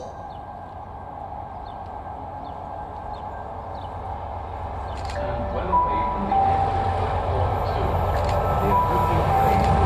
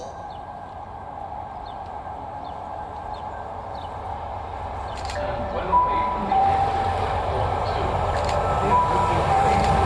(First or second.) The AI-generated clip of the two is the second